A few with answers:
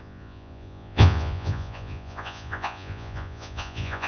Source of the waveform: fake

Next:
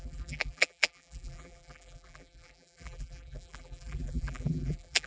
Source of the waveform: fake